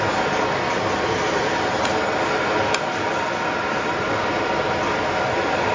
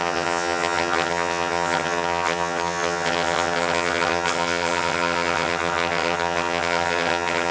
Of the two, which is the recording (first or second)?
first